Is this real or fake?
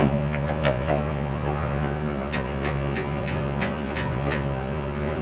fake